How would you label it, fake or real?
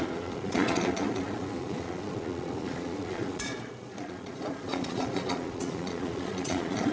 fake